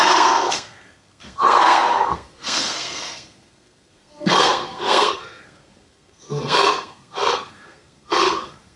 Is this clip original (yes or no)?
no